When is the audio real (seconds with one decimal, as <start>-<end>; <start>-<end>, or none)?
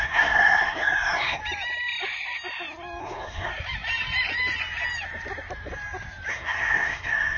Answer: 1.4-3.0; 3.5-6.3